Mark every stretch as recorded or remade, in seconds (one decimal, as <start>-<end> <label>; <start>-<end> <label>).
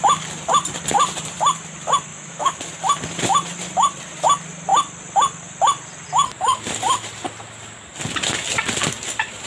0.0-2.1 recorded; 2.1-2.6 remade; 2.6-9.5 recorded